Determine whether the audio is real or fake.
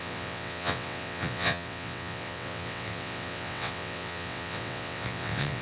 fake